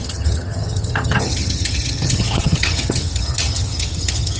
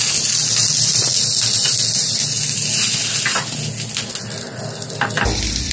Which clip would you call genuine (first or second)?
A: second